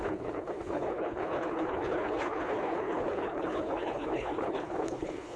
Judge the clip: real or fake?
fake